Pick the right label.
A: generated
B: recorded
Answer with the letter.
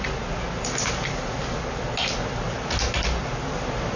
B